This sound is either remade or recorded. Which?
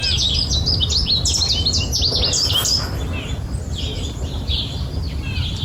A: recorded